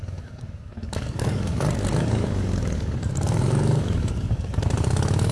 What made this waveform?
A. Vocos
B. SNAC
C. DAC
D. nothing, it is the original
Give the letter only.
C